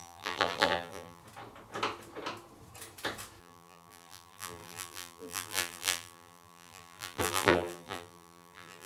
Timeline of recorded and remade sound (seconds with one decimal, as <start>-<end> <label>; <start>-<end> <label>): 0.0-1.2 remade; 1.2-3.4 recorded; 3.4-8.9 remade